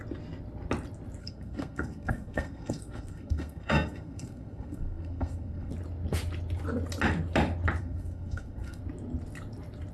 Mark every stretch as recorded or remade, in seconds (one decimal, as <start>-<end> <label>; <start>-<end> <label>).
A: 0.0-1.2 recorded; 1.2-5.7 remade; 5.7-7.8 recorded; 7.8-8.8 remade; 8.8-9.9 recorded